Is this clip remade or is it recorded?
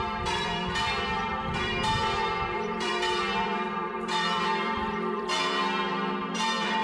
remade